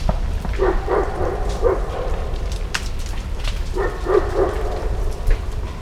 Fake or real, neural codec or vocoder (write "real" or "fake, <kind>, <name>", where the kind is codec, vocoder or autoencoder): fake, vocoder, BigVGAN v2